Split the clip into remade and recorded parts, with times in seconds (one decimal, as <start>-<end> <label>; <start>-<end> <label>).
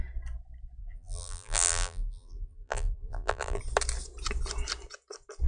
0.0-0.8 recorded; 0.8-3.6 remade; 3.6-5.5 recorded